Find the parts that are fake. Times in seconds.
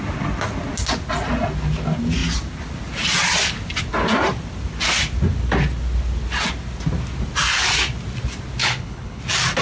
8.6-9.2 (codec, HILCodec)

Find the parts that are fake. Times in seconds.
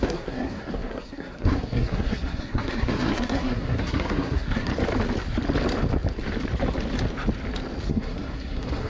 0.0-4.7 (codec, SNAC); 7.9-8.9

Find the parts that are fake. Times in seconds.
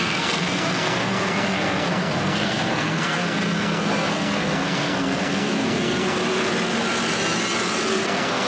0.0-6.2 (codec, SNAC); 7.9-8.5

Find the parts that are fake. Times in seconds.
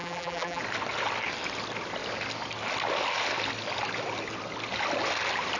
0.0-0.6 (vocoder, BigVGAN v2)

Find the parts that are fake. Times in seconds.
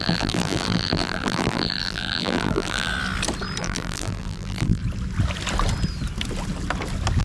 0.0-2.9 (vocoder, BigVGAN v2); 3.6-4.8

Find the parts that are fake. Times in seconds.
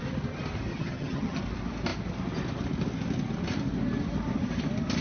0.7-1.4 (vocoder, HiFi-GAN)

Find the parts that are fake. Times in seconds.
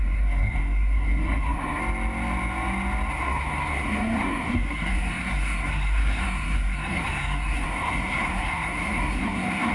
0.0-1.8 (codec, SNAC); 3.1-9.7